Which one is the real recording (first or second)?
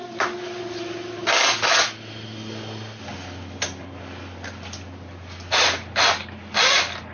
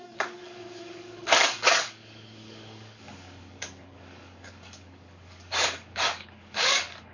first